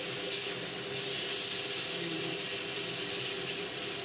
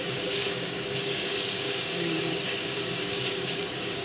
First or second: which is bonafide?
first